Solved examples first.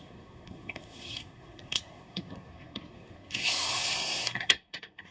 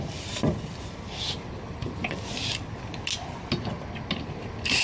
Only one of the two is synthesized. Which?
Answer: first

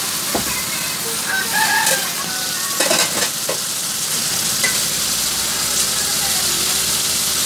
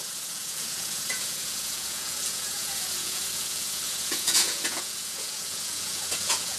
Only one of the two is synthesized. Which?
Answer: second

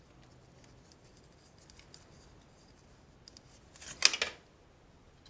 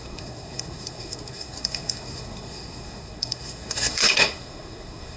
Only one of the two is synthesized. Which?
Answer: second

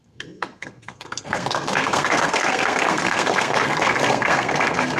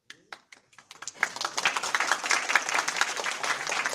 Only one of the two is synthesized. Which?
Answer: first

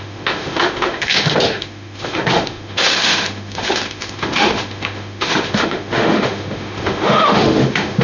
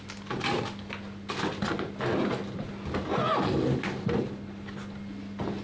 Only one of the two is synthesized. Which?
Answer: first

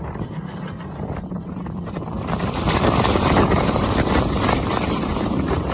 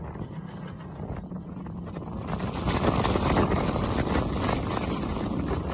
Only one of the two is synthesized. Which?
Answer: first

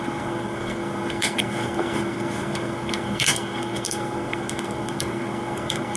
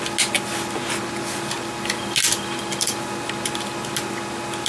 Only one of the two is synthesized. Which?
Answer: first